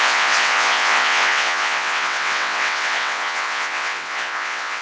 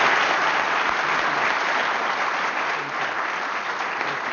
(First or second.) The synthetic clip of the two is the first